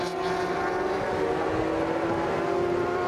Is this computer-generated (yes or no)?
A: no